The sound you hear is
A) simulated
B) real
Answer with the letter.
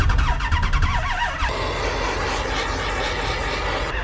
B